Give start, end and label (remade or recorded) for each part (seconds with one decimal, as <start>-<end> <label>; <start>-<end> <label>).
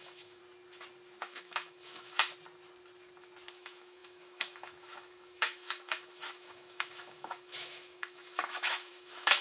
0.0-0.4 remade; 0.4-1.2 recorded; 1.2-2.3 remade; 2.3-3.5 recorded; 3.5-9.4 remade